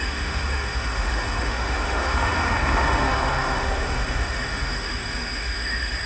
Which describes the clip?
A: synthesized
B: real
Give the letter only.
A